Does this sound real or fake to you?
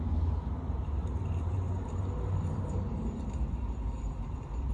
fake